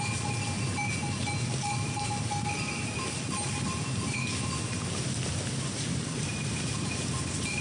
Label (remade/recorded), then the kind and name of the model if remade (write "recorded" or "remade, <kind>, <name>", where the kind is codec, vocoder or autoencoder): recorded